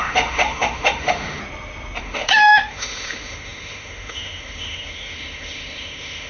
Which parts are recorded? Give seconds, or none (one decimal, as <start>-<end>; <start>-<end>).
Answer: 1.4-2.0